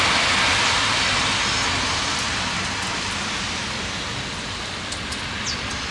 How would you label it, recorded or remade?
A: recorded